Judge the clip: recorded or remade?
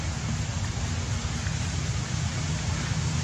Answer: recorded